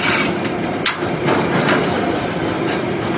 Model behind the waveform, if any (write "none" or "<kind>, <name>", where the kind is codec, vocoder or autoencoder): vocoder, BigVGAN v2